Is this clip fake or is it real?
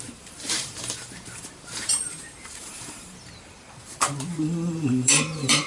fake